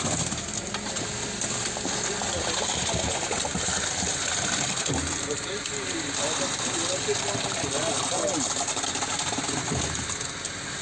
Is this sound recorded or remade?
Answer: recorded